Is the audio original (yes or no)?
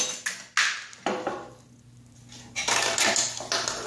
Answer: yes